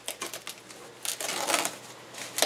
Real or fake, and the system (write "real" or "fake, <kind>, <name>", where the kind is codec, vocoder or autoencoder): real